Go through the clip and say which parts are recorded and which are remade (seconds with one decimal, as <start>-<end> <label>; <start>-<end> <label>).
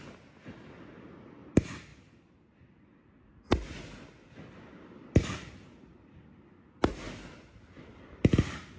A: 0.0-8.8 recorded